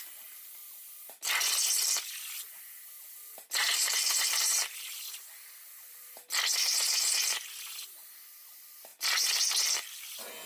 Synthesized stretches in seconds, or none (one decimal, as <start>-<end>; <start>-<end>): 3.6-5.0